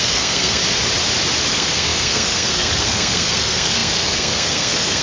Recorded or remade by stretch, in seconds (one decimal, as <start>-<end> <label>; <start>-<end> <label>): 0.0-0.6 remade; 0.6-1.5 recorded; 1.5-5.0 remade